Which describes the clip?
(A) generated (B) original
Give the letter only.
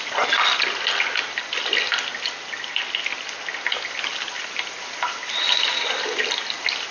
B